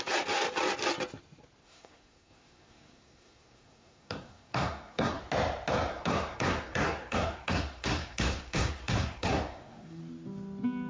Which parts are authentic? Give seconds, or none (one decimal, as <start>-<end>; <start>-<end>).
0.0-1.6; 5.2-5.9; 10.0-10.9